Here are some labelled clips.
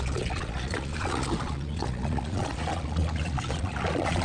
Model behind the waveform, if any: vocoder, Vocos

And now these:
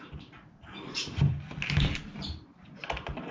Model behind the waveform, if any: none